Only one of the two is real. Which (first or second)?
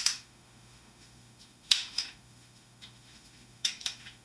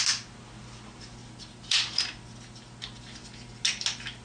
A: second